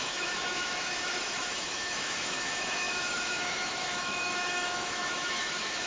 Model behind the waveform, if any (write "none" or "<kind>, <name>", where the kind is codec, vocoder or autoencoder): autoencoder, DAC-VAE